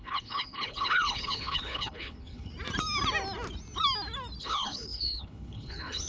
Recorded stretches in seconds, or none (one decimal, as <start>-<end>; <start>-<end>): 2.5-4.4